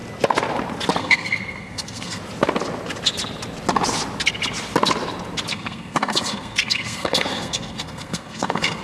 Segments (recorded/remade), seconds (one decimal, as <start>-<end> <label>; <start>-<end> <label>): 0.0-1.0 recorded; 1.0-2.2 remade; 2.2-5.5 recorded; 5.5-8.8 remade